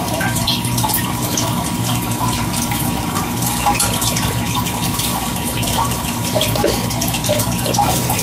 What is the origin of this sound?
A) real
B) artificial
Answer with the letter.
B